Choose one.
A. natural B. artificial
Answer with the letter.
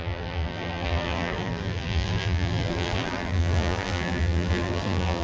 B